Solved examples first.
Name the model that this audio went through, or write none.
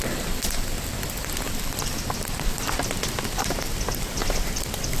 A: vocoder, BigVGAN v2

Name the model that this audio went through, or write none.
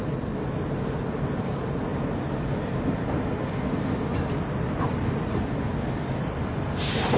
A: none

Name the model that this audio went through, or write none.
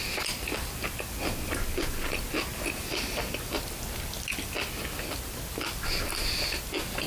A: none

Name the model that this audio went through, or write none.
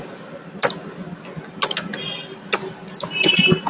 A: none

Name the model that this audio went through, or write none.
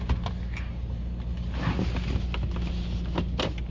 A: none